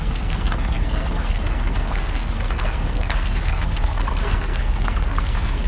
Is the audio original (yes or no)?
no